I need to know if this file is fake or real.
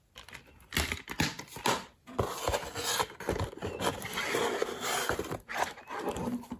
real